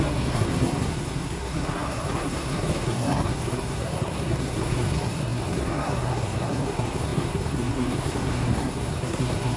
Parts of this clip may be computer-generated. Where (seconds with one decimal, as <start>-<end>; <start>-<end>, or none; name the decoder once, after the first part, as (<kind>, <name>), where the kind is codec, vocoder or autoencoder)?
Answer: 0.0-9.6 (codec, SNAC)